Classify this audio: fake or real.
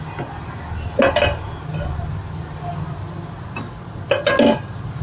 real